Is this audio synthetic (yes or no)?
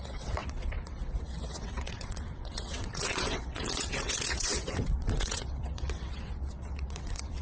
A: yes